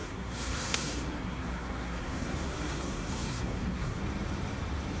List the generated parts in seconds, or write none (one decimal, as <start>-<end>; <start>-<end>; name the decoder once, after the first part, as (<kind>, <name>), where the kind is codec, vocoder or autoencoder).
0.0-4.0 (codec, SNAC)